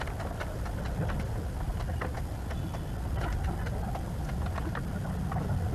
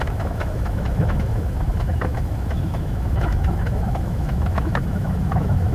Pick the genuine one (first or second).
first